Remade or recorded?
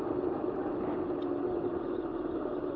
recorded